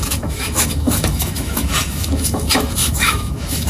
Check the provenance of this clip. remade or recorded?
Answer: remade